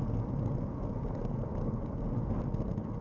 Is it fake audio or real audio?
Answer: real